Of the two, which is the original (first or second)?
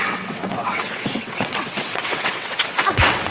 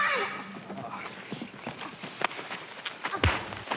second